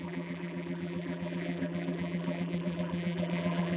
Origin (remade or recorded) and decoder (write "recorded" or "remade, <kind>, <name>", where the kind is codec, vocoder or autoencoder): remade, vocoder, BigVGAN v2